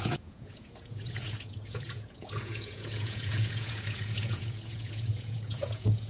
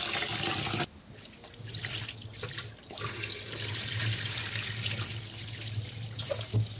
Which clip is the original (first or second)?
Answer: second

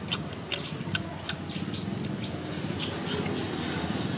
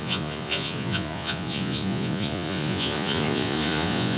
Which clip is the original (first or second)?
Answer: first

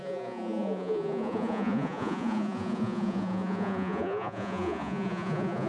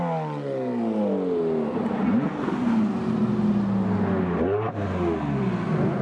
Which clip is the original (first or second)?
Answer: second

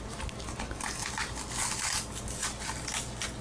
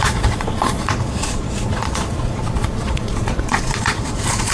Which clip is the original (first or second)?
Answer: first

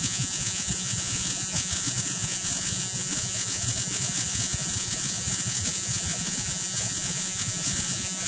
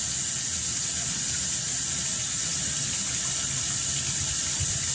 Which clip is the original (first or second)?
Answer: second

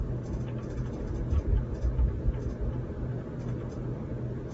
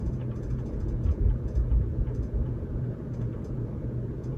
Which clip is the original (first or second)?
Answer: first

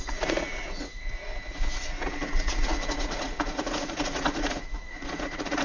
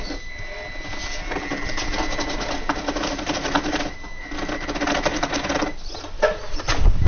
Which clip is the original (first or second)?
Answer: second